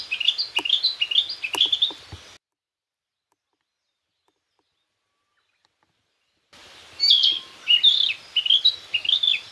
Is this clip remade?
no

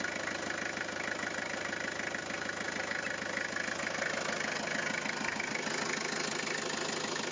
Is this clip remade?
no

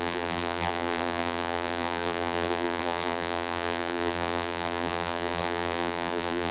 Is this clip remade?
yes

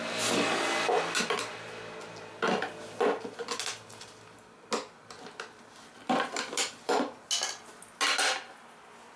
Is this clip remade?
no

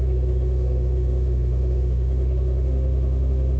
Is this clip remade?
yes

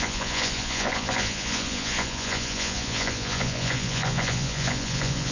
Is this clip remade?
yes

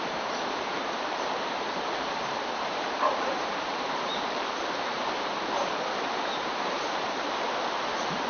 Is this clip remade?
yes